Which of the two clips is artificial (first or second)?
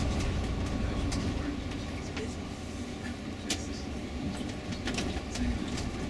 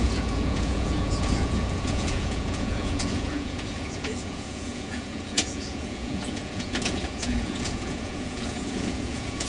second